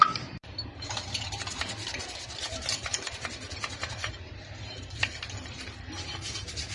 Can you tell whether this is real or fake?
fake